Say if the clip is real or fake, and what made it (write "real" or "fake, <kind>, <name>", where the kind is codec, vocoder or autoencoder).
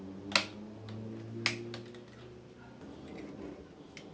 real